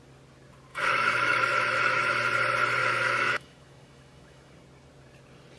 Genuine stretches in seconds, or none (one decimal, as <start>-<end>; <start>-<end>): 0.0-0.7; 2.1-2.8; 4.5-5.6

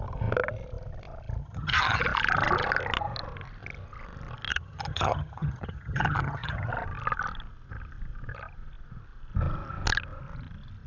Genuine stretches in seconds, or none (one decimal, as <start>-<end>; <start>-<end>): 0.0-1.4; 2.0-4.5; 6.7-10.9

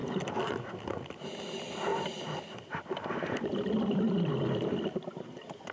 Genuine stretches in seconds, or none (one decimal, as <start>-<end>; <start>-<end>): 0.9-1.9; 2.4-3.5; 4.0-5.7

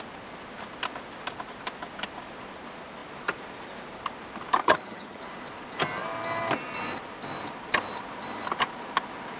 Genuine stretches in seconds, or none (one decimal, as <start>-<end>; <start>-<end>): 0.0-4.6; 5.2-9.4

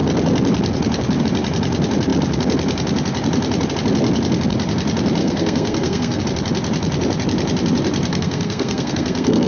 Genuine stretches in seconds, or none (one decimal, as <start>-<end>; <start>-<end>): 0.0-5.2; 6.2-8.1

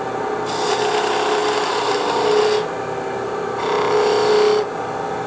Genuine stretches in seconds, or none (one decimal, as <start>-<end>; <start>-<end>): 0.0-5.3

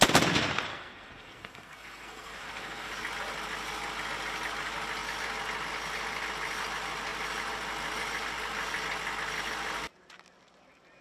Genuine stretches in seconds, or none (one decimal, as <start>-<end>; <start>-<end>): 0.0-0.7; 2.9-11.0